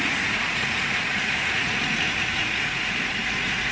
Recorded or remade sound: remade